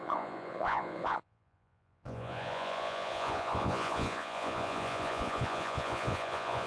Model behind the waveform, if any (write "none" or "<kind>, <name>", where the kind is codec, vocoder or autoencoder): vocoder, Vocos